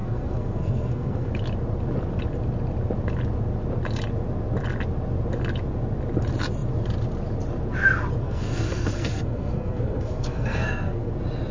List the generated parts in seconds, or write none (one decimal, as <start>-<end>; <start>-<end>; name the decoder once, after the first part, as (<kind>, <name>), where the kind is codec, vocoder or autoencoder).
0.0-1.3 (codec, SNAC); 8.2-11.1